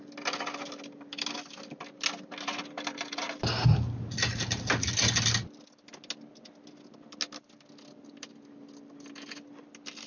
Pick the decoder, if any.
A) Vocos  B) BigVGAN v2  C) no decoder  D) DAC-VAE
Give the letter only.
C